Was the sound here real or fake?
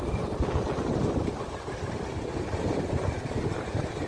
real